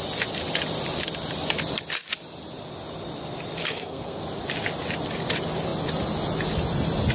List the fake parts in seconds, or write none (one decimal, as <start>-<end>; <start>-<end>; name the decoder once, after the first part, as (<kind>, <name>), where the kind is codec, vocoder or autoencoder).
3.6-4.2 (codec, SNAC)